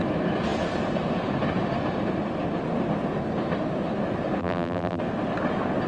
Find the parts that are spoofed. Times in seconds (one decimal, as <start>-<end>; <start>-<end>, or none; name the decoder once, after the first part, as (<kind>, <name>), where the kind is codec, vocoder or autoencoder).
4.4-5.0 (vocoder, BigVGAN v2)